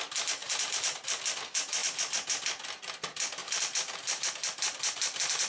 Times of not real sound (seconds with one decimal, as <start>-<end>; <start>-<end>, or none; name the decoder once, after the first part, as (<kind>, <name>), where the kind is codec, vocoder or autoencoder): 0.4-1.2 (vocoder, BigVGAN v2); 3.4-4.2